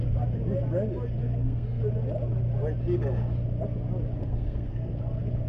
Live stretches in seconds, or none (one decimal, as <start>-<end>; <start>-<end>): 0.0-1.2; 1.8-4.2; 4.9-5.5